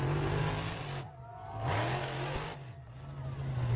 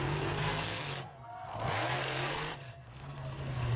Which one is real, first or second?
first